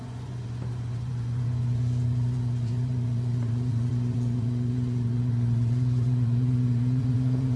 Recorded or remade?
remade